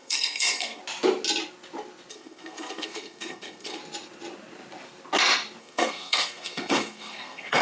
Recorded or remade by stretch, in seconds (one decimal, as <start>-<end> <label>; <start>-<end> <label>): 0.0-0.8 remade; 0.8-2.1 recorded; 2.1-3.8 remade; 3.8-5.6 recorded; 5.6-7.6 remade